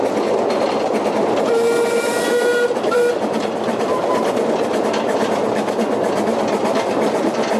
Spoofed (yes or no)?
no